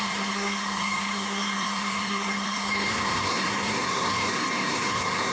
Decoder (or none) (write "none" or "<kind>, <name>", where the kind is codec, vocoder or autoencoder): codec, SNAC